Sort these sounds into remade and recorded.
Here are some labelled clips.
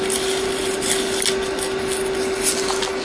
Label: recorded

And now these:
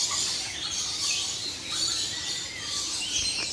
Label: recorded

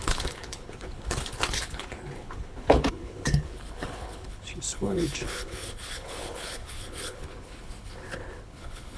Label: remade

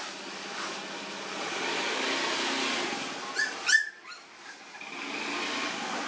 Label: recorded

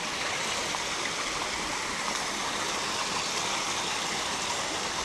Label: recorded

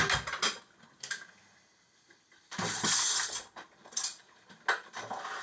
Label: recorded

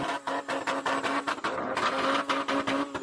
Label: recorded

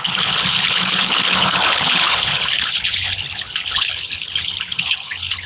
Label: remade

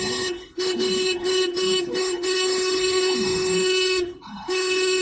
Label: remade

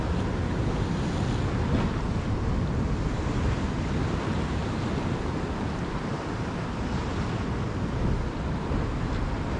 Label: recorded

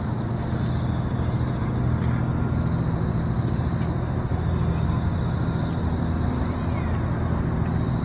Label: recorded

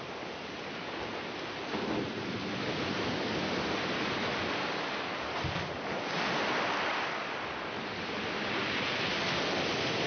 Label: recorded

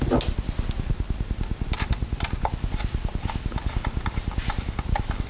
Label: recorded